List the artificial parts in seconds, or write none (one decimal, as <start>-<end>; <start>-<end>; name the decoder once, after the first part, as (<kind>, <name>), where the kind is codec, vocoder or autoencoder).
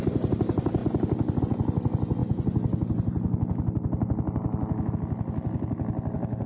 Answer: none